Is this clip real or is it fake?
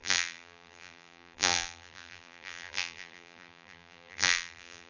fake